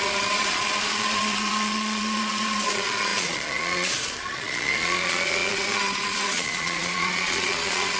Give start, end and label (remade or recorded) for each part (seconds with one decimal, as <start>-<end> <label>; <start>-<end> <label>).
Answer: 0.0-8.0 remade